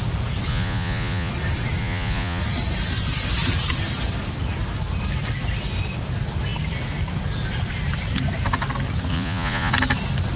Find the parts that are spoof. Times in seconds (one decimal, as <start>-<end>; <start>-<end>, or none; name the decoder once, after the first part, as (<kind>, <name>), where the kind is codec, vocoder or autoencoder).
0.5-1.3 (vocoder, Vocos); 1.8-2.4; 9.1-9.7